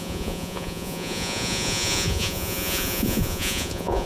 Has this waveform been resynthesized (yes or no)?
yes